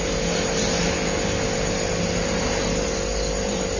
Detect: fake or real real